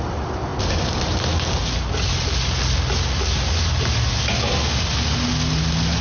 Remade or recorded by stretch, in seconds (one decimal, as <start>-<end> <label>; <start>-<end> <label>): 0.0-6.0 recorded